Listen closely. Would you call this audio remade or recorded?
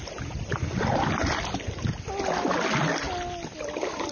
recorded